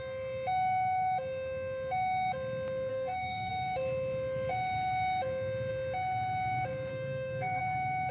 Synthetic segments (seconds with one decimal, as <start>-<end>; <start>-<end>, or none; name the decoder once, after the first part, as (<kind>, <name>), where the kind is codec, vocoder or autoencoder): 2.9-3.5 (codec, SNAC); 6.9-7.6